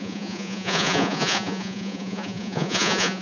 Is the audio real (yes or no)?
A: no